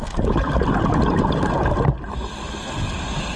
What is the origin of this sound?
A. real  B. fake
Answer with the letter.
B